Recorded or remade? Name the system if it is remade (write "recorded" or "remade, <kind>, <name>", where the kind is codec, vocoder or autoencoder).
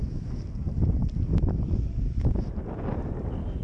recorded